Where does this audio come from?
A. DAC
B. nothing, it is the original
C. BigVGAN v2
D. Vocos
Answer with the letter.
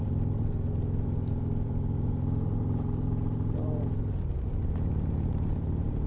C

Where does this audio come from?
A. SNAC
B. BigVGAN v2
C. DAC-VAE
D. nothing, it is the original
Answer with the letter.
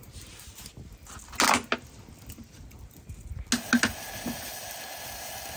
D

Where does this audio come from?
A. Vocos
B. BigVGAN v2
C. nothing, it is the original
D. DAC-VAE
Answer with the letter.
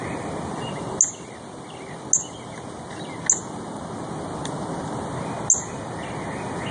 C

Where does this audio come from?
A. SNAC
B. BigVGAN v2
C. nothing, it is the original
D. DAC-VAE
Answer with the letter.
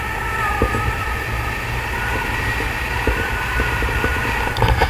C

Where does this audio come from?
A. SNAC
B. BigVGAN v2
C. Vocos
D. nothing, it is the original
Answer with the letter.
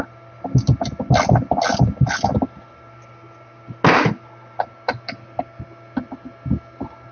D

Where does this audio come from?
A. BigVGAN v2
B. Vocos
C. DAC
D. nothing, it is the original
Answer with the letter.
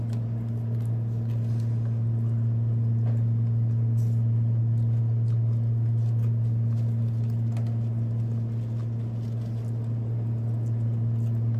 D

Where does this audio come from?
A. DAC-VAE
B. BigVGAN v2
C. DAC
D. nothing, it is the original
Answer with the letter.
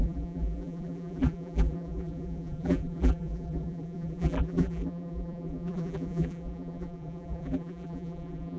B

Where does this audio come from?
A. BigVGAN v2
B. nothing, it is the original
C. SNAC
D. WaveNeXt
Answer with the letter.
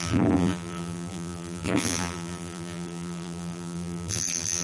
A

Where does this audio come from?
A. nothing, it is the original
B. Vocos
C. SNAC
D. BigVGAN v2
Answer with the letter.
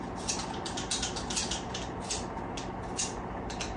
A